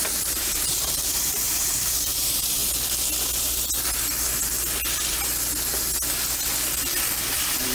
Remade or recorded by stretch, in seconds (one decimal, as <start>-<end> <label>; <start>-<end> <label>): 0.0-2.6 remade; 2.6-7.2 recorded; 7.2-7.7 remade